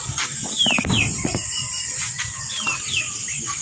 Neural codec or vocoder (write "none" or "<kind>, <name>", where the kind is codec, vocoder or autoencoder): none